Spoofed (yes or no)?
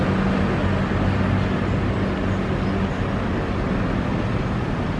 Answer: no